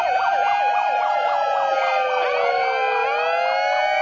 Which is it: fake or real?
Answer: real